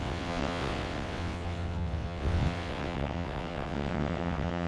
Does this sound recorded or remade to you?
remade